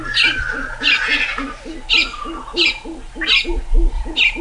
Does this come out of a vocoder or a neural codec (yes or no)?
no